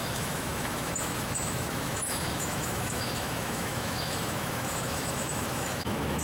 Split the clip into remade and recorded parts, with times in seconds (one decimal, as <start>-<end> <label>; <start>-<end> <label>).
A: 0.0-6.2 remade